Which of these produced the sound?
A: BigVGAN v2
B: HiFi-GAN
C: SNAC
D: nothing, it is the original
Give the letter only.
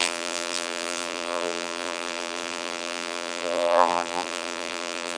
A